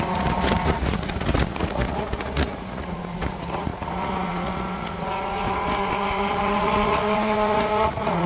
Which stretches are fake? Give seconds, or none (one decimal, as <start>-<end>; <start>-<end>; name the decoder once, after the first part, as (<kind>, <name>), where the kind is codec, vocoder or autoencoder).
0.0-8.3 (vocoder, Vocos)